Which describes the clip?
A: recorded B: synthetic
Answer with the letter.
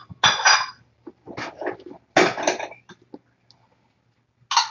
A